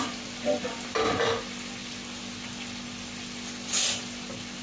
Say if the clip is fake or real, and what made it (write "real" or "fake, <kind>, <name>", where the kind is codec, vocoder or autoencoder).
real